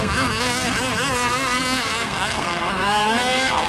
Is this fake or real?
fake